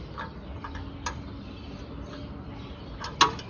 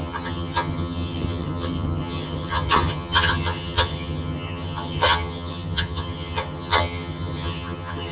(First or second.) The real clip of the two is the first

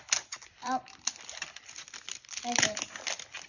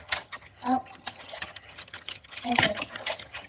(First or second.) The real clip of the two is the first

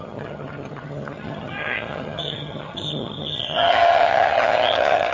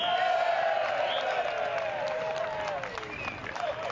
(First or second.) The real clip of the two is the second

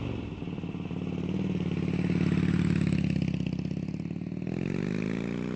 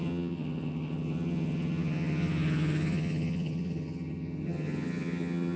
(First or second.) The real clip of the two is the first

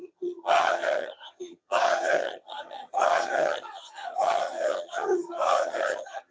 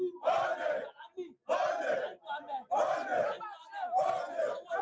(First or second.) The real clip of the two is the second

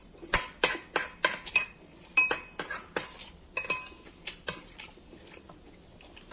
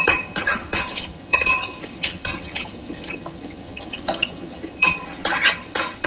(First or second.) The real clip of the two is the first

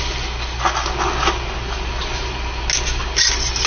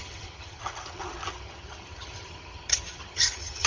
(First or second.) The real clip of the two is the first